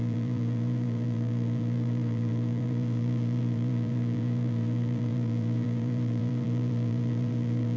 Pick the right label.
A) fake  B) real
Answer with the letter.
A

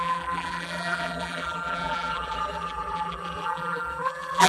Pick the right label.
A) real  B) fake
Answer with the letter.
B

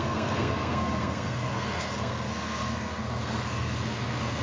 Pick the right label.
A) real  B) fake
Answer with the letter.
B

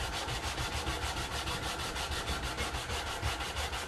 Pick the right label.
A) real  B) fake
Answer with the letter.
A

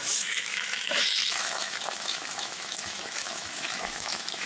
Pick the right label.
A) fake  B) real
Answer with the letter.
A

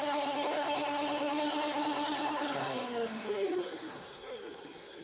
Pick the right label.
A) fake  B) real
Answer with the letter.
A